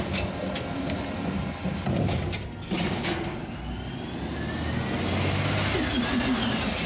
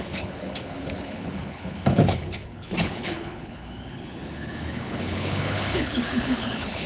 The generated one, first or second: second